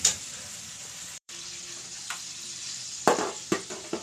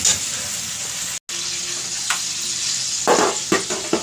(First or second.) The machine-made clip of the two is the first